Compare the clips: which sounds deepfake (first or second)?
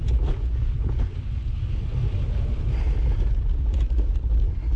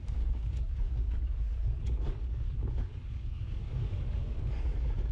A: second